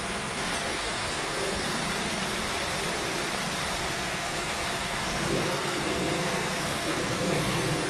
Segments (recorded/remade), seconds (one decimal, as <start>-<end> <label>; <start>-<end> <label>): 0.0-1.8 remade; 1.8-3.9 recorded; 3.9-7.9 remade